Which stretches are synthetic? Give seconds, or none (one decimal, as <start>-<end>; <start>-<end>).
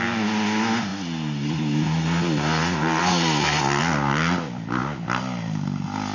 none